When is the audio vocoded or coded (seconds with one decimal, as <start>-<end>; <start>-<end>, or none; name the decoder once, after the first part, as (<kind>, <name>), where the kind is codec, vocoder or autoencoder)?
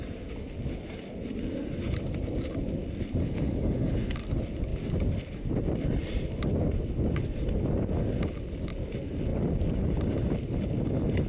3.2-3.9 (autoencoder, DAC-VAE)